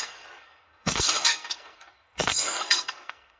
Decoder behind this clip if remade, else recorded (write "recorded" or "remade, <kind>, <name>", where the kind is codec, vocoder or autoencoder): remade, codec, SNAC